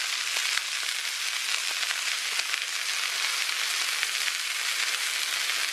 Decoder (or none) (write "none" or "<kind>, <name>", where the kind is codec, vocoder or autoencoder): none